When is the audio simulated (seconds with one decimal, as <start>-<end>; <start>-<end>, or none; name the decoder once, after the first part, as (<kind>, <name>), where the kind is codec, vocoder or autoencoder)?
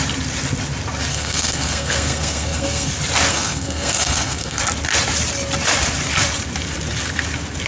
1.1-2.9 (codec, SNAC); 3.3-4.6